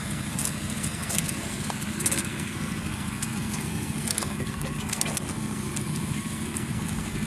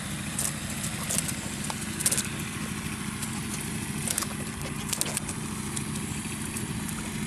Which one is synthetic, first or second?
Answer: first